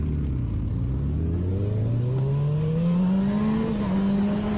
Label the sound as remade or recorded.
recorded